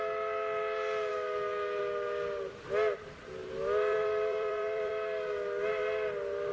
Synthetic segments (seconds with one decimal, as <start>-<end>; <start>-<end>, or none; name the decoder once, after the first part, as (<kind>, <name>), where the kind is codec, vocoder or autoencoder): 3.4-4.9 (vocoder, BigVGAN v2)

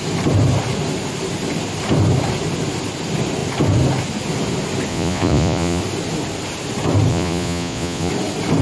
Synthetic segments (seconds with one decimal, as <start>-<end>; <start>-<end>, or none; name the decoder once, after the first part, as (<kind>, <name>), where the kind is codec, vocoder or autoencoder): 4.9-5.8 (vocoder, Vocos); 7.1-8.1

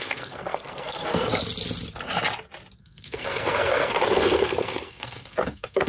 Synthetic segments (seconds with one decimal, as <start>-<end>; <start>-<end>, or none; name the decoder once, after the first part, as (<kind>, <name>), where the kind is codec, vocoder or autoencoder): 0.0-1.3 (codec, SNAC); 2.8-5.9

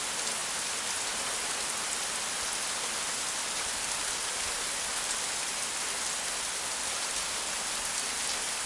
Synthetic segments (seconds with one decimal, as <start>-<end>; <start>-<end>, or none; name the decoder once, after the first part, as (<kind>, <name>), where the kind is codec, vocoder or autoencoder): none